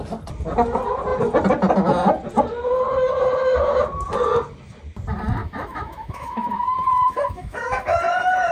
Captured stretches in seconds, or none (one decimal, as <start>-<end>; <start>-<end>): 0.0-5.4; 8.0-8.5